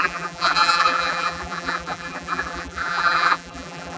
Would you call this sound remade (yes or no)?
yes